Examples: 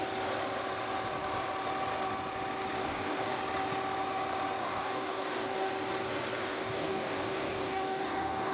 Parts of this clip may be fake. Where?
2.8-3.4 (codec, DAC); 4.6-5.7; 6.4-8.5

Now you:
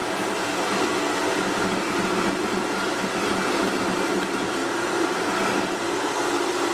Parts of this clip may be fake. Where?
4.6-5.2 (vocoder, BigVGAN v2)

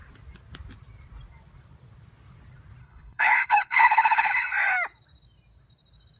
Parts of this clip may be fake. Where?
2.8-4.3 (codec, HILCodec)

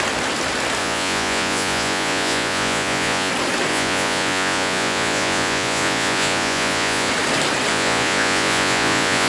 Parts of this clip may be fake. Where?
0.8-3.3 (vocoder, Vocos); 3.7-7.1; 7.7-9.3